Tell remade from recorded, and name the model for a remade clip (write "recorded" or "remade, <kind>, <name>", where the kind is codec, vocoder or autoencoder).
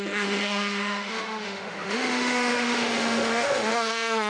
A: remade, autoencoder, DAC-VAE